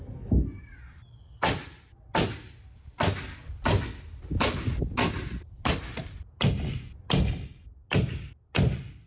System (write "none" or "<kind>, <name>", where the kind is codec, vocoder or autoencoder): none